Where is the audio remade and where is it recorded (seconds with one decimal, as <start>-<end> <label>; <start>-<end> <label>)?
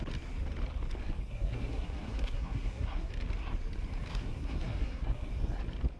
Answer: 0.0-1.3 recorded; 1.3-3.1 remade; 3.1-4.1 recorded; 4.1-5.3 remade; 5.3-6.0 recorded